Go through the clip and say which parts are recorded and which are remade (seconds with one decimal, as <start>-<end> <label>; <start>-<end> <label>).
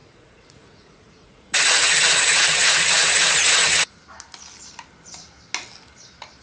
0.0-1.9 remade; 1.9-2.3 recorded; 2.3-4.0 remade; 4.0-6.4 recorded